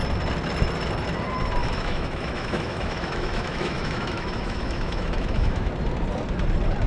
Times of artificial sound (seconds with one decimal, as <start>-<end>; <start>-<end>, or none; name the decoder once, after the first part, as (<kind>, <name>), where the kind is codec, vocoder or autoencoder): 1.6-5.7 (autoencoder, DAC-VAE)